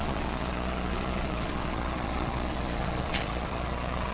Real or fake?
fake